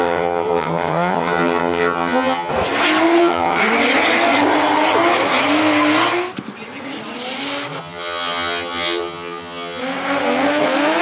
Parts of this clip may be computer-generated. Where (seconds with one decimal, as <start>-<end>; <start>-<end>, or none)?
0.0-2.5; 3.2-3.6; 7.8-9.8